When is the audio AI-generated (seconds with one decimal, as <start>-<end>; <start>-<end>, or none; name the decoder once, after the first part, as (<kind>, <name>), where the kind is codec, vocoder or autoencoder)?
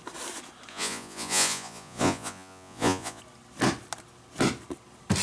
0.7-3.2 (vocoder, Vocos)